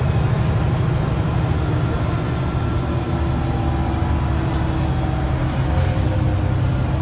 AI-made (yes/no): no